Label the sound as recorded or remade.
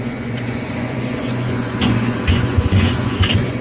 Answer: remade